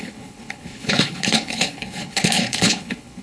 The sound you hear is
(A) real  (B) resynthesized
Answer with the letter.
B